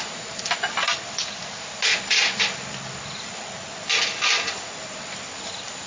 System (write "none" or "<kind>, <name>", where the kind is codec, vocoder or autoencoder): none